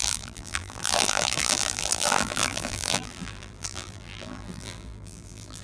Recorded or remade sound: remade